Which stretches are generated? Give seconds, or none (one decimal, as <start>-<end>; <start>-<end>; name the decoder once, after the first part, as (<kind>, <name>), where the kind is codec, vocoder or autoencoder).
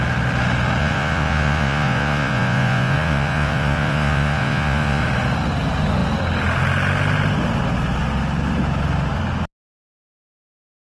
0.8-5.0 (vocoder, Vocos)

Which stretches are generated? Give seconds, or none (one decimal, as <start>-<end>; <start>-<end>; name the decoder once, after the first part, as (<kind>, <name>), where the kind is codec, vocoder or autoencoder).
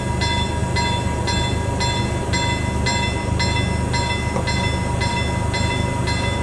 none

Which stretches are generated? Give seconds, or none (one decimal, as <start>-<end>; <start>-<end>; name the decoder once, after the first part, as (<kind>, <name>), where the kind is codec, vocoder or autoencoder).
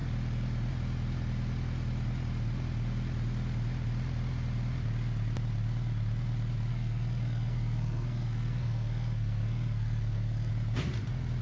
6.7-10.5 (codec, SNAC)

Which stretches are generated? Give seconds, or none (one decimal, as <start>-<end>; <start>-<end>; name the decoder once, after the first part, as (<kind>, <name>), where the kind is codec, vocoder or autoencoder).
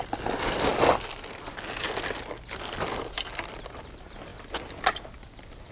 none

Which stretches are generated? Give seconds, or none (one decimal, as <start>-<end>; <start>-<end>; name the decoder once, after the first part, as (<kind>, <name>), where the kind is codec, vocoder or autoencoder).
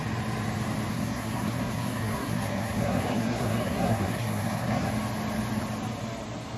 0.9-4.9 (codec, SNAC)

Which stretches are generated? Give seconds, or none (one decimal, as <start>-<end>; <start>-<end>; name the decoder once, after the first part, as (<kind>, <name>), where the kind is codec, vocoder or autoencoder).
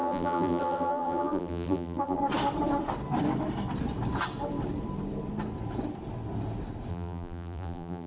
0.0-2.2 (vocoder, BigVGAN v2); 6.9-8.1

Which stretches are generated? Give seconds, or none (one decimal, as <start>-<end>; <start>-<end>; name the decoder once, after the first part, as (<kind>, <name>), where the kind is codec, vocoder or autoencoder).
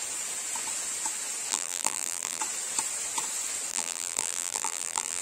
1.5-2.4 (vocoder, BigVGAN v2); 3.7-5.2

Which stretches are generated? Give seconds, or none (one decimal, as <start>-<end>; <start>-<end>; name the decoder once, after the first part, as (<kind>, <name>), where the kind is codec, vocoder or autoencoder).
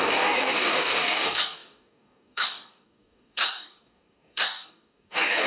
0.0-5.5 (codec, DAC)